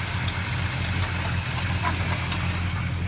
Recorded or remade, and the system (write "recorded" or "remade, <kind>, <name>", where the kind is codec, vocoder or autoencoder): recorded